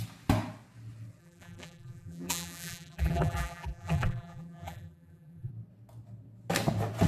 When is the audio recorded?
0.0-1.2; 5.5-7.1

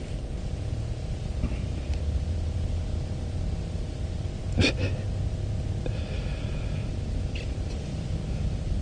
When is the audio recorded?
0.0-1.0; 4.4-6.8

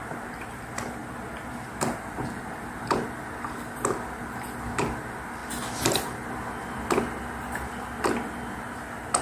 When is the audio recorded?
0.0-9.2

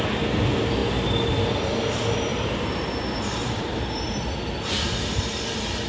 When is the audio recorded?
0.0-2.3; 3.0-3.4; 4.1-5.9

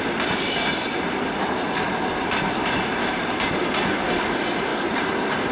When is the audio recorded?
none

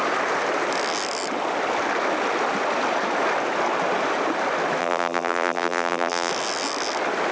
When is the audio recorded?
0.0-4.8; 6.3-7.3

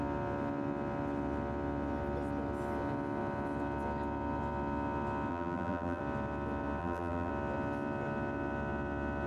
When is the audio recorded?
0.0-5.3; 6.0-6.8; 7.3-9.3

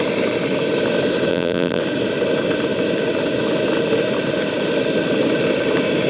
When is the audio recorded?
0.0-1.3; 1.8-6.1